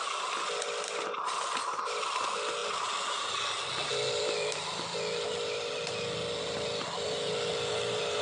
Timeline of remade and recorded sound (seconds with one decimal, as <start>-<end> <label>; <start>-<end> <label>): 0.0-8.2 recorded